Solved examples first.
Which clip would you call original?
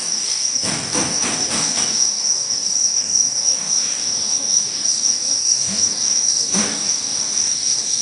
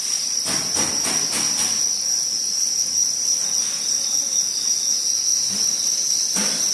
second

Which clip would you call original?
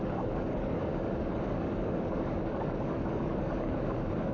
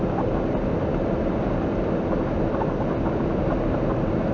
second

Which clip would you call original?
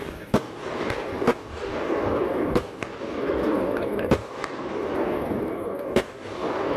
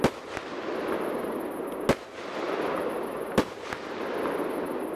second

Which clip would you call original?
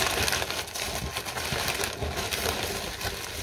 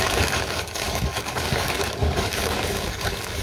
first